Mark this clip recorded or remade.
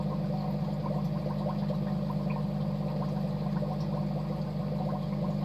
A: recorded